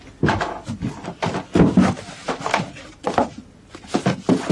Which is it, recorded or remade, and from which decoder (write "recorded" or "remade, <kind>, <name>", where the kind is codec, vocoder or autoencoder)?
recorded